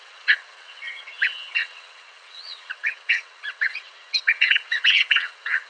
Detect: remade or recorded remade